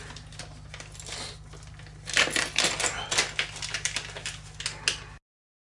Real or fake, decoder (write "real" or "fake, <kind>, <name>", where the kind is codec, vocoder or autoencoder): real